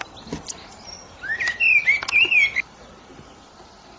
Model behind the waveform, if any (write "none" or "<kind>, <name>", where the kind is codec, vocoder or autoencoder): none